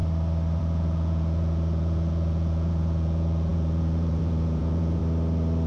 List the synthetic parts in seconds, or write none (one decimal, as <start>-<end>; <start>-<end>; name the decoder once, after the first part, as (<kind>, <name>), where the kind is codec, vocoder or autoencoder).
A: 0.6-5.0 (vocoder, Vocos)